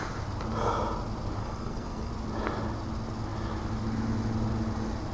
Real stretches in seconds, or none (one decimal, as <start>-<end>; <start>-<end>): 0.0-1.4; 2.1-5.1